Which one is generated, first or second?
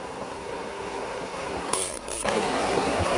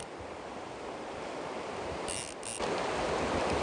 first